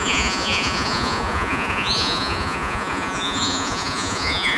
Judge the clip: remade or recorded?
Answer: remade